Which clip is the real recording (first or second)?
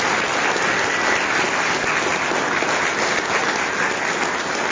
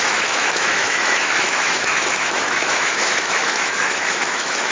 first